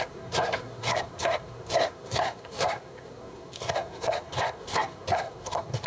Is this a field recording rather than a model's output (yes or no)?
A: no